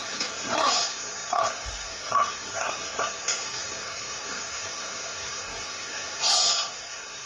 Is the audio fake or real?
fake